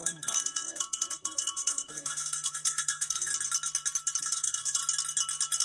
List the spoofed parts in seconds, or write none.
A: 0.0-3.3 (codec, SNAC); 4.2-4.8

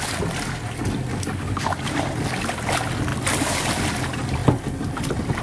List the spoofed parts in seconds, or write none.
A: 1.1-1.9 (codec, DAC)

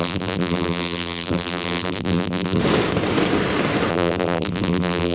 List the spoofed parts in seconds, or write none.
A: 0.0-2.6 (vocoder, BigVGAN v2); 3.9-5.1